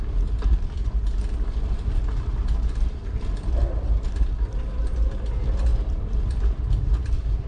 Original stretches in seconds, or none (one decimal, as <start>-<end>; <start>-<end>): 0.0-7.5